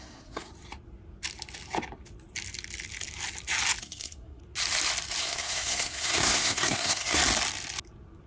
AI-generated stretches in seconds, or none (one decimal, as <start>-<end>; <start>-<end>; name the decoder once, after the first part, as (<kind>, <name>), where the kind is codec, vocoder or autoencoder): 0.0-0.5 (codec, SNAC); 3.8-4.4; 5.2-7.2